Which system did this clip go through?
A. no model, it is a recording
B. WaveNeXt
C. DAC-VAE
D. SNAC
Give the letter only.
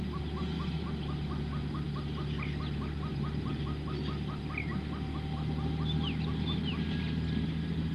A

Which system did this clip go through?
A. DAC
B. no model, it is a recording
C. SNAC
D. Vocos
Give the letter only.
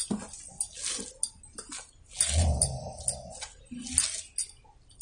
B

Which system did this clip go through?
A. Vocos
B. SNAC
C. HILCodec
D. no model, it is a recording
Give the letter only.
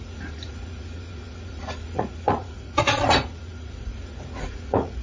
A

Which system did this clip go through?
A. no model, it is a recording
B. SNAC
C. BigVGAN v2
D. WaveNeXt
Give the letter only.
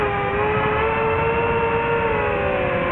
A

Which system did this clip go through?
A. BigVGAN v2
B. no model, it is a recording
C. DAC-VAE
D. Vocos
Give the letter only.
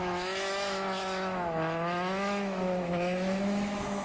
C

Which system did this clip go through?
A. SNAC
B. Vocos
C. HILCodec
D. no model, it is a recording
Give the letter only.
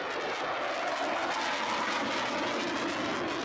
D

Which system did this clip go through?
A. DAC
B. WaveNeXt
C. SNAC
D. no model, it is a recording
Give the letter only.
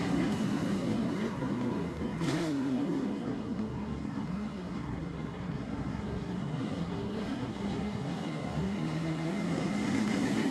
C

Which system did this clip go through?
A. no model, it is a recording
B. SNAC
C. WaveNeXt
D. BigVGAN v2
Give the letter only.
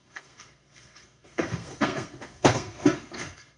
B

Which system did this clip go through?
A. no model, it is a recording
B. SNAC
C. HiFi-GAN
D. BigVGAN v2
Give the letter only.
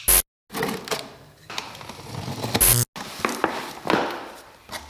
A